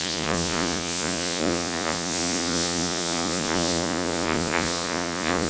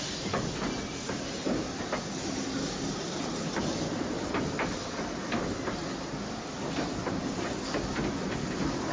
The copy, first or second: first